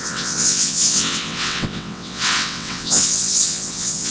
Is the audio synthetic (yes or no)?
yes